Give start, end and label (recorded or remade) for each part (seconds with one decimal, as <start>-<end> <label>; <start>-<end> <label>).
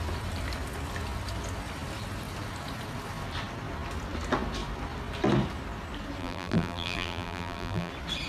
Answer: 0.0-6.2 recorded; 6.2-7.9 remade; 7.9-8.3 recorded